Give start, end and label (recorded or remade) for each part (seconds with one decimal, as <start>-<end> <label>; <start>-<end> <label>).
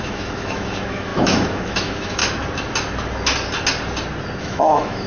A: 0.0-2.2 remade; 2.2-4.4 recorded; 4.4-5.1 remade